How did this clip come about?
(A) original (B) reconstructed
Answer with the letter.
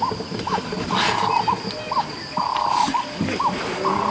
A